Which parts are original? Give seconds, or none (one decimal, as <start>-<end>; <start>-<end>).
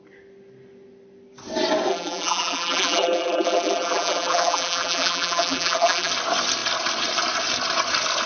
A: 0.0-1.9; 6.1-8.3